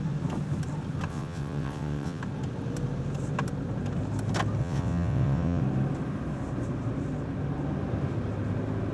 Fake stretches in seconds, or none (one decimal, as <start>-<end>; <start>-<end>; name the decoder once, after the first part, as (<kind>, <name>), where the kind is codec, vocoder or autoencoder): 1.1-2.2 (vocoder, WaveNeXt); 4.6-5.6